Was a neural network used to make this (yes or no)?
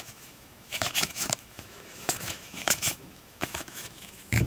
yes